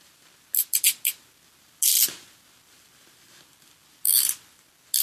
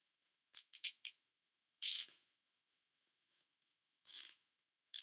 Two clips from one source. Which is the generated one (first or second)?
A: second